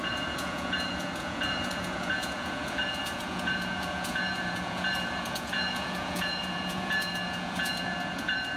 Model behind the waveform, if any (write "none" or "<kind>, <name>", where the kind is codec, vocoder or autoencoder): vocoder, Vocos